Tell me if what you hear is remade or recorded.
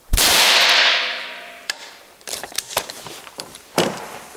remade